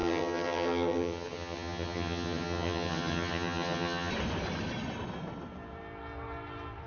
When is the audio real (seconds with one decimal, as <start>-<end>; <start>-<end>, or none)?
4.1-6.9